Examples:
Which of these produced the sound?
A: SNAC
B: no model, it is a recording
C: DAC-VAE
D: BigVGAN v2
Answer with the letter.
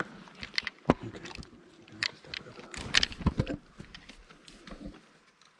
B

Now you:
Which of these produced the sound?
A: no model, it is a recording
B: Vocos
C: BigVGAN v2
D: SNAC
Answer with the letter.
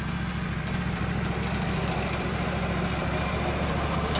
A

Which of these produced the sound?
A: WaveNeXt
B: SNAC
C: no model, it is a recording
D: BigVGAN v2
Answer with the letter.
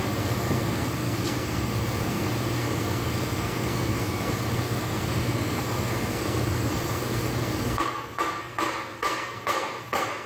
B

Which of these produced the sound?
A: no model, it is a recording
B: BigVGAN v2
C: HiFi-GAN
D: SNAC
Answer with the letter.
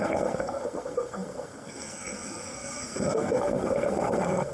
D